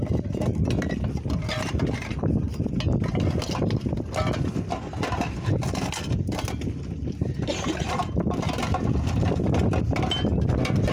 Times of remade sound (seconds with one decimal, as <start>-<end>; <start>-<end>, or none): none